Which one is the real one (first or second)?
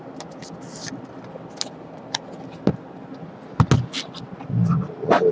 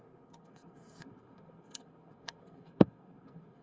first